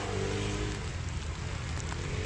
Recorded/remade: recorded